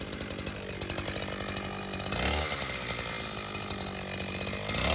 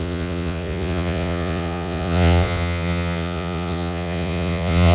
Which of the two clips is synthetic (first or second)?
second